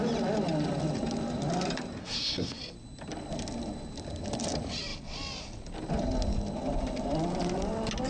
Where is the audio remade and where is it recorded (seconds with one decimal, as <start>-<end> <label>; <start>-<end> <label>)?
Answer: 0.0-2.0 recorded; 2.0-2.6 remade; 2.6-8.1 recorded